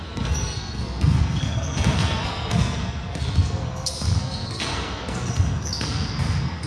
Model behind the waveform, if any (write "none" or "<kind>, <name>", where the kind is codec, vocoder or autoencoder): codec, SNAC